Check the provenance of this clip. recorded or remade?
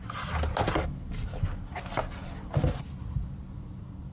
recorded